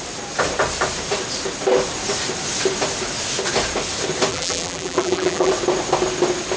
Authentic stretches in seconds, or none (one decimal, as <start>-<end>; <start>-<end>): 0.0-4.3; 5.5-6.6